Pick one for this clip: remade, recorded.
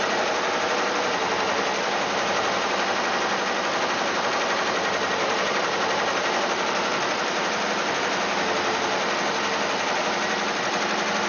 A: recorded